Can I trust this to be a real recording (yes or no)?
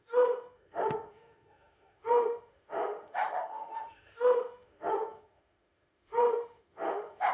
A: no